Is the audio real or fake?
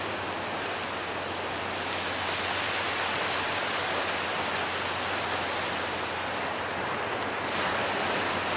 real